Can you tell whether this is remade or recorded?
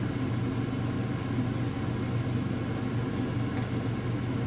recorded